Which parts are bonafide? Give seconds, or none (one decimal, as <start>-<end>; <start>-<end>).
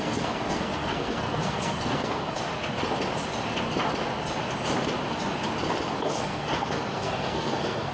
2.5-6.0